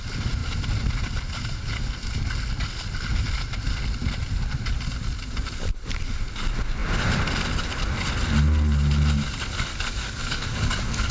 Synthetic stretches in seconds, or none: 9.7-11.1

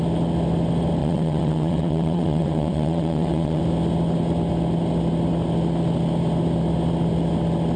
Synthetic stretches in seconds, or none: 1.0-3.6

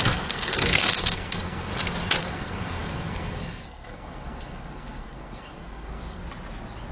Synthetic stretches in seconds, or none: 0.0-1.7; 2.2-6.2